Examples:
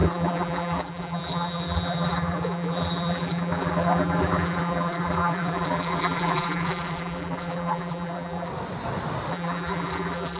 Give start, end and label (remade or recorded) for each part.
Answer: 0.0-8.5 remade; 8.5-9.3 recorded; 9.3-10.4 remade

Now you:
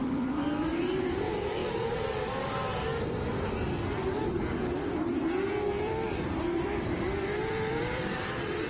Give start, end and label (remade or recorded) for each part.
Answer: 0.0-1.6 remade; 1.6-3.7 recorded; 3.7-4.2 remade; 4.2-5.8 recorded; 5.8-8.7 remade

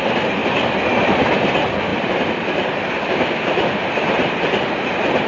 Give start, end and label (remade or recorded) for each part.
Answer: 0.0-0.4 recorded; 0.4-1.3 remade; 1.3-1.9 recorded; 1.9-4.3 remade; 4.3-5.3 recorded

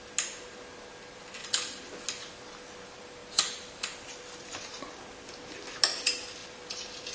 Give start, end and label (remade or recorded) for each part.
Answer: 0.0-1.4 recorded; 1.4-1.9 remade; 1.9-3.2 recorded; 3.2-4.8 remade; 4.8-6.4 recorded; 6.4-7.1 remade

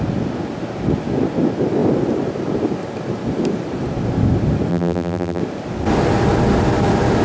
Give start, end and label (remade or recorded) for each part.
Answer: 0.0-4.7 recorded; 4.7-5.4 remade; 5.4-7.2 recorded

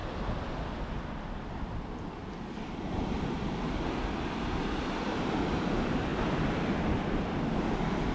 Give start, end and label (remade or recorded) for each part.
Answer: 0.0-8.1 recorded

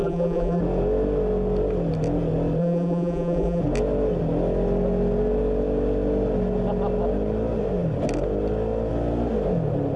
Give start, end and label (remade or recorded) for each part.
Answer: 0.0-0.6 remade; 0.6-2.6 recorded; 2.6-3.6 remade; 3.6-10.0 recorded

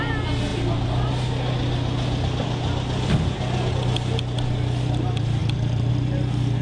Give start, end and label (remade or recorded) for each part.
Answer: 0.0-5.4 recorded; 5.4-5.9 remade; 5.9-6.6 recorded